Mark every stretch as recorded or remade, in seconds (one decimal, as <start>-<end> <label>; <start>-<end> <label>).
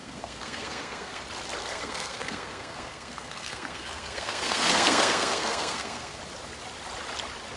0.0-1.2 remade; 1.2-1.6 recorded; 1.6-6.2 remade; 6.2-7.6 recorded